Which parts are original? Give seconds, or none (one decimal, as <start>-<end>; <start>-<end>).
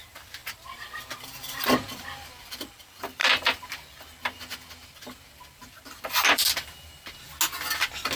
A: 0.0-0.4; 2.7-3.2; 4.0-5.6; 7.1-8.2